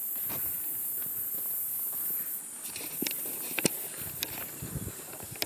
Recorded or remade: recorded